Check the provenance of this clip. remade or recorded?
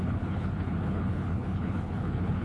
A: remade